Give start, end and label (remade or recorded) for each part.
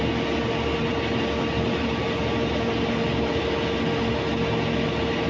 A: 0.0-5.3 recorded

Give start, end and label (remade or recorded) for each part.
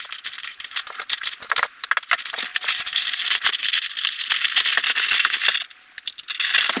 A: 0.0-0.5 recorded; 0.5-1.9 remade; 1.9-2.5 recorded; 2.5-3.2 remade; 3.2-6.8 recorded